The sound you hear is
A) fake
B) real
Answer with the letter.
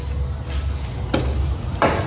B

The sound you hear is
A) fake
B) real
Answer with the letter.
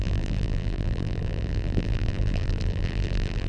A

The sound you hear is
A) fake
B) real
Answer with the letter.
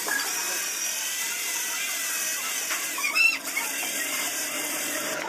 A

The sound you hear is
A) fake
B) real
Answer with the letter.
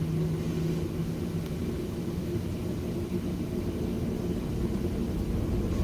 B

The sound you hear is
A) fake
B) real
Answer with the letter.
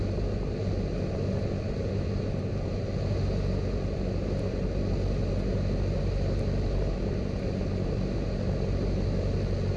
B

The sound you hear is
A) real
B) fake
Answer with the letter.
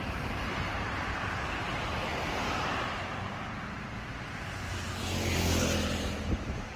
B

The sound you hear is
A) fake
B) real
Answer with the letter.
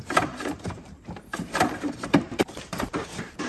A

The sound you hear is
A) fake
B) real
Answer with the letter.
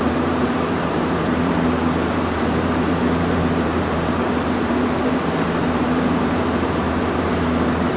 A